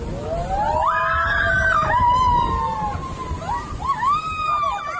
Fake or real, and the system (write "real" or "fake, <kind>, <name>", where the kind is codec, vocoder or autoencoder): real